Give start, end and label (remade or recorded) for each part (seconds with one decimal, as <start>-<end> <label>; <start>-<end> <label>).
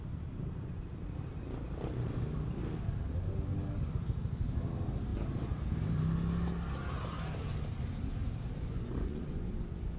0.0-8.7 recorded; 8.7-9.5 remade; 9.5-10.0 recorded